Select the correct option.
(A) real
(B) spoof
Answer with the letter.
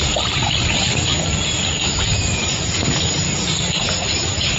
A